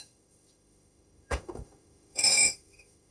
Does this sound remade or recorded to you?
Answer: remade